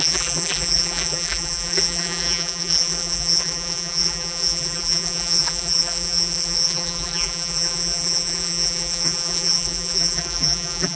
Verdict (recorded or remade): remade